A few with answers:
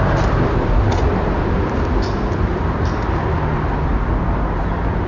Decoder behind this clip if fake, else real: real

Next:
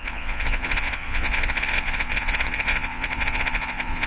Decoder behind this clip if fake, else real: fake, vocoder, Vocos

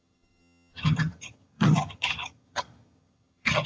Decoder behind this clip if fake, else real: fake, vocoder, HiFi-GAN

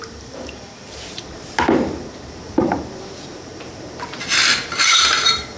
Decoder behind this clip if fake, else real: fake, vocoder, BigVGAN v2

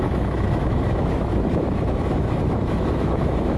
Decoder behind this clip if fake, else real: fake, autoencoder, DAC-VAE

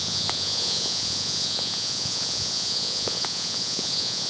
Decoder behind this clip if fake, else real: fake, vocoder, Vocos